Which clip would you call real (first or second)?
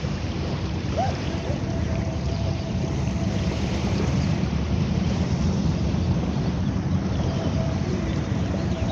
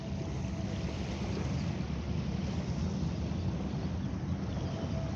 second